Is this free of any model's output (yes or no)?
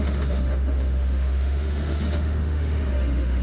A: no